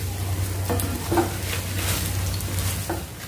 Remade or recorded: recorded